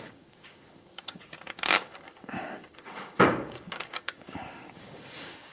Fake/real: fake